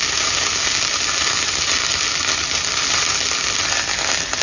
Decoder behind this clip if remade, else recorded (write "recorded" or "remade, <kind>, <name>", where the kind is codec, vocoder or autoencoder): recorded